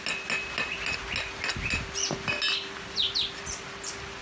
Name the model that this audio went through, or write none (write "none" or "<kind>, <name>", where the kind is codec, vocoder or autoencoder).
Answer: none